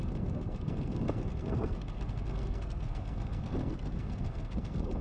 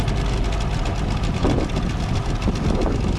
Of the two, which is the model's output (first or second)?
first